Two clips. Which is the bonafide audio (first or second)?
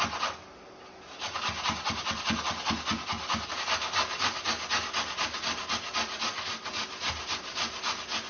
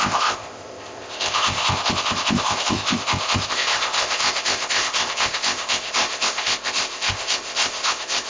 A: first